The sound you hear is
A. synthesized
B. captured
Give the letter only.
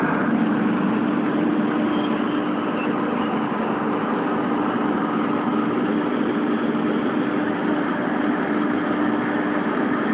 B